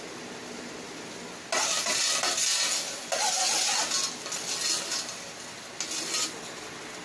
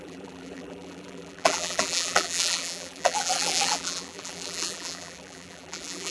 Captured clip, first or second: first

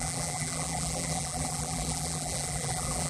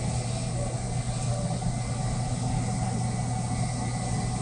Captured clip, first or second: second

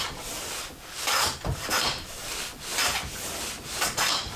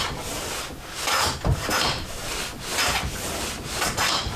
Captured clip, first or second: second